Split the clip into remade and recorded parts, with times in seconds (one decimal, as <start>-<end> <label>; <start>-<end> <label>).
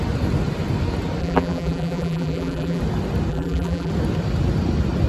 0.0-1.2 recorded; 1.2-2.8 remade; 2.8-3.3 recorded; 3.3-3.9 remade; 3.9-5.1 recorded